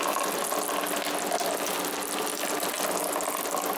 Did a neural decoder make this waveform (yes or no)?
no